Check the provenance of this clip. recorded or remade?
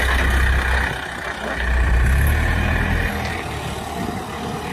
recorded